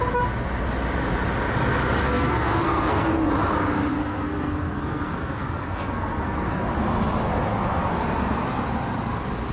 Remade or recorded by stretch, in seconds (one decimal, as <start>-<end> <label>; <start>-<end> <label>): 0.0-2.0 recorded; 2.0-3.3 remade; 3.3-3.9 recorded; 3.9-6.6 remade; 6.6-7.5 recorded; 7.5-8.0 remade; 8.0-9.5 recorded